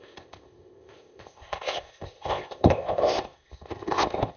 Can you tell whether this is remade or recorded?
remade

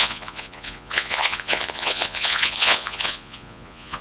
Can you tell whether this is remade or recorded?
remade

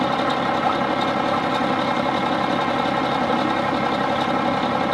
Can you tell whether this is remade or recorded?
recorded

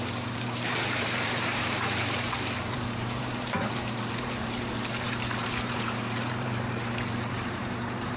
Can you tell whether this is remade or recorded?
remade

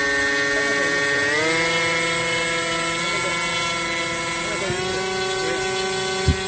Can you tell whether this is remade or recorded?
recorded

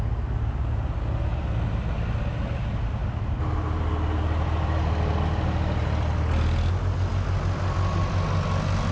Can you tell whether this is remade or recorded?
recorded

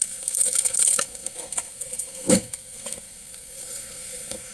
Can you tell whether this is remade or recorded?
remade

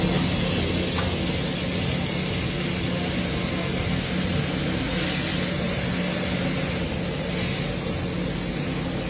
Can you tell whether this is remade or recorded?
recorded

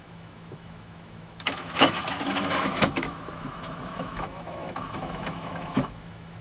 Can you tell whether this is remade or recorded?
remade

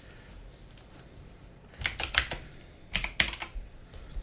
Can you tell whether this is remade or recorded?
recorded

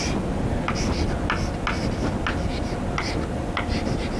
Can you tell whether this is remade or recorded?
recorded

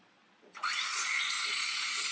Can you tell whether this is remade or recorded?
remade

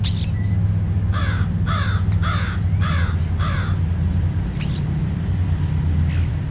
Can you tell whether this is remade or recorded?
recorded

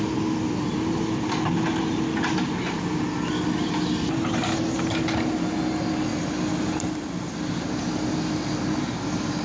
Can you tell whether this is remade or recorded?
recorded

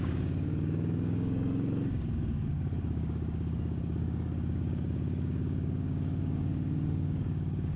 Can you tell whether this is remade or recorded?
remade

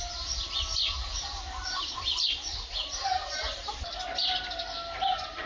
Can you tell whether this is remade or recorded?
recorded